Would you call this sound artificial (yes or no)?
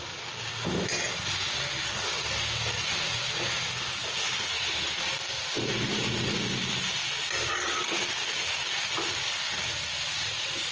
no